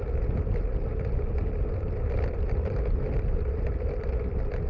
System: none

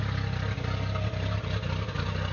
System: none